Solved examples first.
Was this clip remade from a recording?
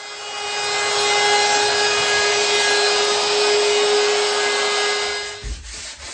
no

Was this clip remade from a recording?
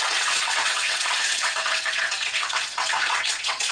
yes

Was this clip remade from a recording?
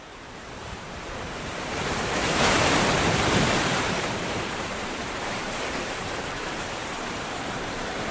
yes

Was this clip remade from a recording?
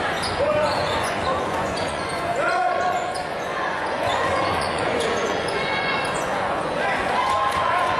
yes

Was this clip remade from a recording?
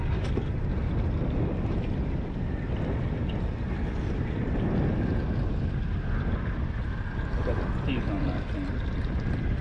no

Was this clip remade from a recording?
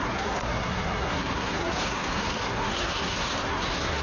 yes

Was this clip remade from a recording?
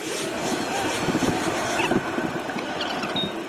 no